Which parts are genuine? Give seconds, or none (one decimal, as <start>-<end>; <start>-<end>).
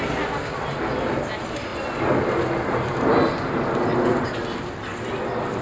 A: 0.0-5.6